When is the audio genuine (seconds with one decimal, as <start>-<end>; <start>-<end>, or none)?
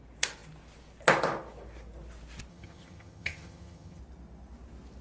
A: 0.0-2.5; 4.0-5.0